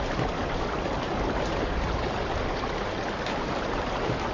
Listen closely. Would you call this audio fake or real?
real